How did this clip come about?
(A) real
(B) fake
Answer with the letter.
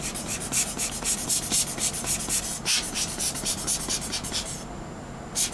B